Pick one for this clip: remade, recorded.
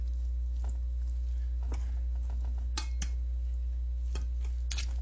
recorded